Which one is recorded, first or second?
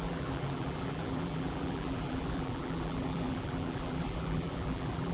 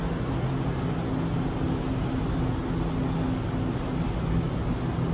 second